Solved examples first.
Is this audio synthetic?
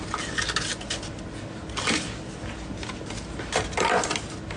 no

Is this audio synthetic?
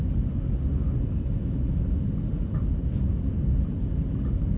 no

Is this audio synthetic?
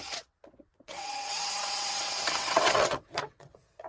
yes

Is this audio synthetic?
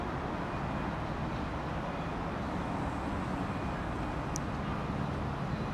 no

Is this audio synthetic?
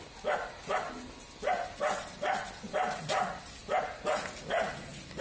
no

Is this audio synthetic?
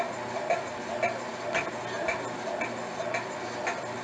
no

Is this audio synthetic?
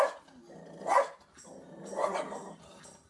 no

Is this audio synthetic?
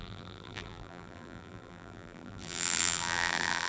yes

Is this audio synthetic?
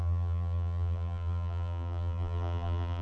yes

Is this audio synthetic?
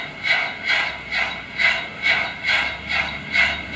yes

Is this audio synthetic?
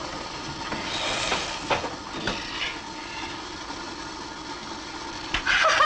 no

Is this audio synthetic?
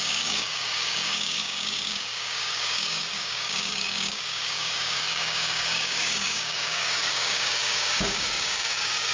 yes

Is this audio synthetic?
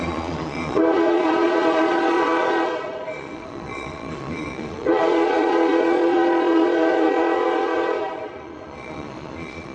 yes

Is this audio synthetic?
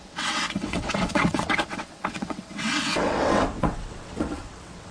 yes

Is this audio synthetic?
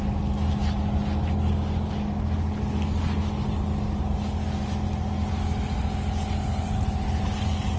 no